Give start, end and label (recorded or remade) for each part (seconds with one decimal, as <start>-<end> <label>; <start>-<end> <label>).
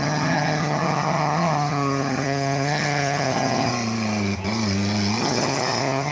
0.0-3.7 remade; 3.7-5.2 recorded; 5.2-6.1 remade